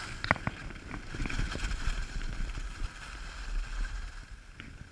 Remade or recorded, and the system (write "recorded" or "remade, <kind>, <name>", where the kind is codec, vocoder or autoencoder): recorded